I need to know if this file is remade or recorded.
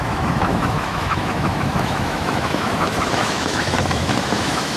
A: remade